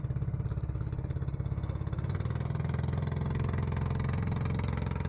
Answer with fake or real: real